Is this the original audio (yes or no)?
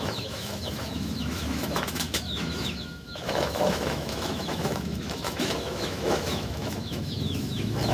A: no